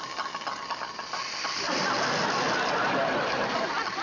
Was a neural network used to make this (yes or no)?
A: no